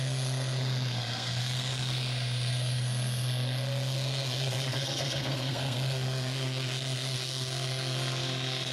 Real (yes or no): no